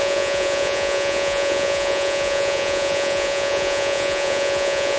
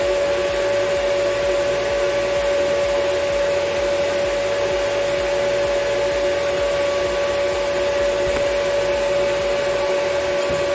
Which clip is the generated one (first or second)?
first